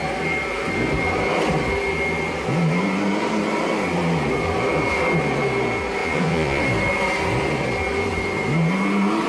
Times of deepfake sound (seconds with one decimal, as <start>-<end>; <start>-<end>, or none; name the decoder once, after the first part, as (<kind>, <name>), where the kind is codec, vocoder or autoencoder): 6.0-6.6 (vocoder, Vocos)